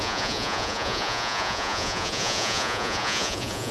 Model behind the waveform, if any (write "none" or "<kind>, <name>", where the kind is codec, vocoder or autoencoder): vocoder, Vocos